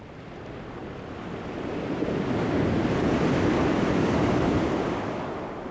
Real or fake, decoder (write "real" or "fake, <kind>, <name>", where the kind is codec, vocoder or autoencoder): real